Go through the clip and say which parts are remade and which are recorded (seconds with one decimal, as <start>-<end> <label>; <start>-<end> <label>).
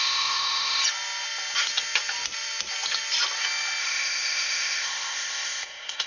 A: 0.0-0.8 remade; 0.8-3.8 recorded; 3.8-6.1 remade